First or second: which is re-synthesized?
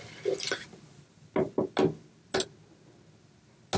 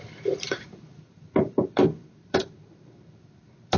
second